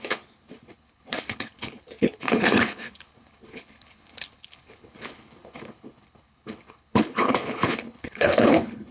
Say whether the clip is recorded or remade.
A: remade